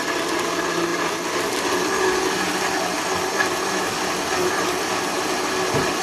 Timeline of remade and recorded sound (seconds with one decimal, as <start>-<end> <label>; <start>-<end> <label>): 0.0-6.0 recorded